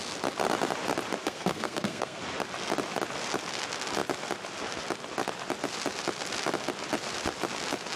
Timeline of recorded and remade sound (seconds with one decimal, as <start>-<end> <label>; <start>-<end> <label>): 0.0-1.2 recorded; 1.2-2.2 remade; 2.2-8.0 recorded